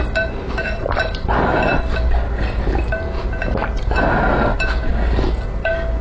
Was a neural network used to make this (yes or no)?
no